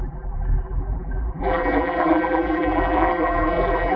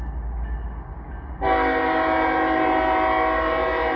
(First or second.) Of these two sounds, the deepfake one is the first